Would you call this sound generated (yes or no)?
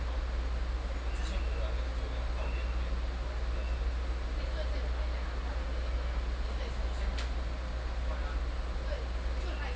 no